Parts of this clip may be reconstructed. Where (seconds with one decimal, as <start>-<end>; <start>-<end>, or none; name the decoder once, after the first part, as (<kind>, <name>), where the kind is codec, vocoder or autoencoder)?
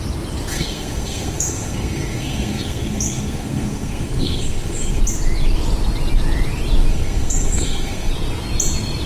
0.5-5.0 (codec, SNAC); 6.9-8.1